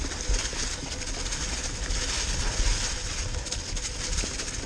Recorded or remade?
recorded